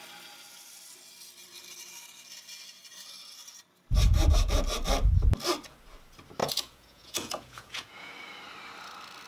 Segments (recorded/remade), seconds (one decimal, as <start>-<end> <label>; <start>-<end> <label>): 0.0-6.4 recorded; 6.4-8.1 remade; 8.1-9.3 recorded

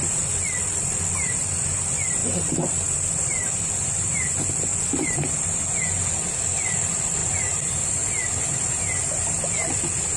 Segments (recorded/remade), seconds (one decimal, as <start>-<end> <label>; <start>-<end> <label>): 0.0-10.2 recorded

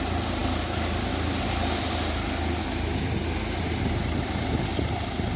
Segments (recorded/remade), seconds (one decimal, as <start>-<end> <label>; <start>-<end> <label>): 0.0-5.4 recorded

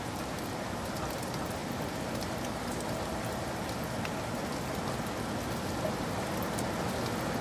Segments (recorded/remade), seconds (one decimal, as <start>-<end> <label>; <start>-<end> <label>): 0.0-7.4 recorded

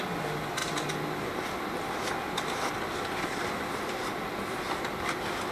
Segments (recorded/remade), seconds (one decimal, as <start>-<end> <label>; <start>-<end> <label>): 0.0-5.5 recorded

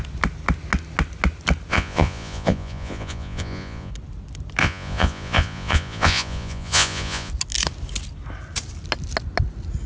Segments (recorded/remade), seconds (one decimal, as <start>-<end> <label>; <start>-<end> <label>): 0.0-1.7 recorded; 1.7-3.9 remade; 3.9-4.6 recorded; 4.6-7.3 remade; 7.3-9.9 recorded